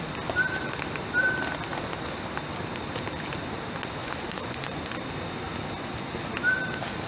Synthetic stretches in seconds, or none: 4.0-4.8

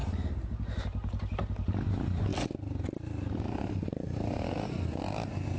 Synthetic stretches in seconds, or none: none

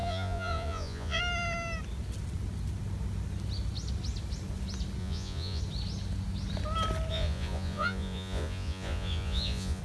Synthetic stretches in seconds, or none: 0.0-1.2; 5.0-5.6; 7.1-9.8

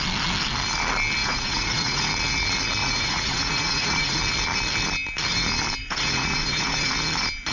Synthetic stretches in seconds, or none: 1.2-2.0; 2.8-4.2; 5.8-6.9

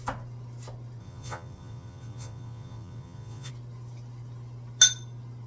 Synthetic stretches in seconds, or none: 1.0-3.5

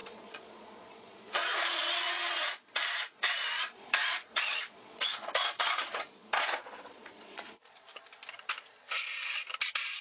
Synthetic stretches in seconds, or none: 0.0-7.9

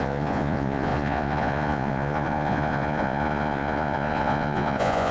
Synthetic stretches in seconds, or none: 0.0-5.1